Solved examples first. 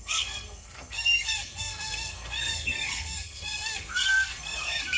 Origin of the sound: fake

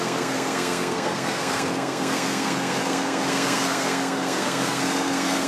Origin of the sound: fake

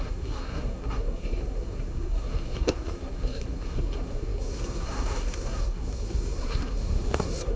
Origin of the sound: fake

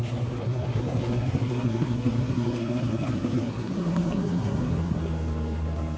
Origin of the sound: fake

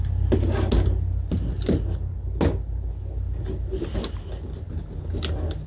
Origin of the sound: real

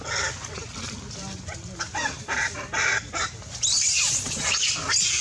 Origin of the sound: real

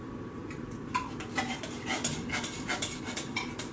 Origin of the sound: real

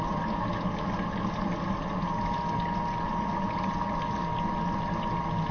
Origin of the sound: real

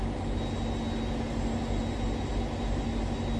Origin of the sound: real